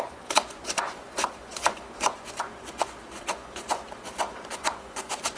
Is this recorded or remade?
remade